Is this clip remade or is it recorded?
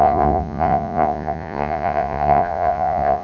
remade